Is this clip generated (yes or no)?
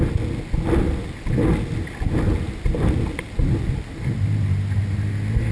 no